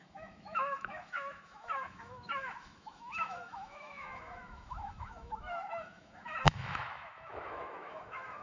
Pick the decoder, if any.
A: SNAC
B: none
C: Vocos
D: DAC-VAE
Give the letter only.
D